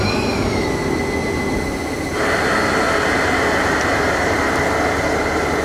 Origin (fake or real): real